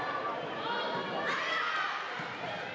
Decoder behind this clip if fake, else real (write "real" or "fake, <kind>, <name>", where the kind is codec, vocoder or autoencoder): real